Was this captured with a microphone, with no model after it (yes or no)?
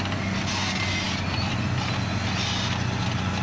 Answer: yes